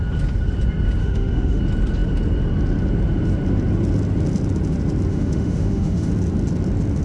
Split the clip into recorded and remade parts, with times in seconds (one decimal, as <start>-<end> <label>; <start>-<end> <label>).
0.0-1.0 recorded; 1.0-1.6 remade; 1.6-5.1 recorded; 5.1-6.1 remade; 6.1-7.0 recorded